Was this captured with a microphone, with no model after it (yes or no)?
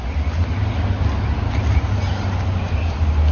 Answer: yes